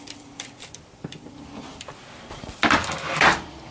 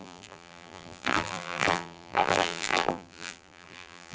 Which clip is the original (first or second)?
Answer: first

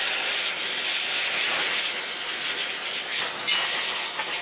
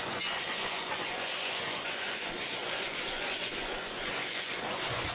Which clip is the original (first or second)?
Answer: first